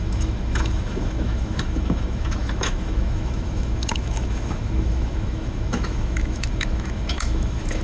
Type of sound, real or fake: fake